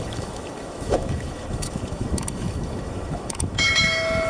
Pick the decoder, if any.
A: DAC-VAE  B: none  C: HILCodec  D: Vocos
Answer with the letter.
A